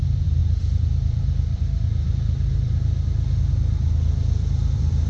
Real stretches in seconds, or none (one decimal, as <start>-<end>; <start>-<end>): none